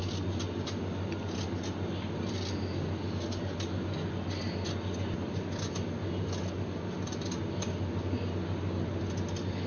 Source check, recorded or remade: recorded